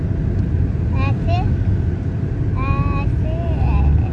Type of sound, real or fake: real